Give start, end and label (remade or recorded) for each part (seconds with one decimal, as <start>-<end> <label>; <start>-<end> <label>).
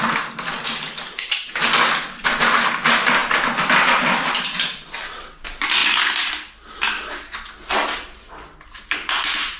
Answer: 0.0-9.6 recorded